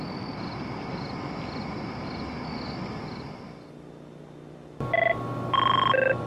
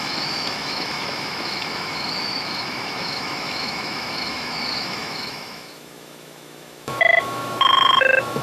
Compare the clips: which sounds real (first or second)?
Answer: first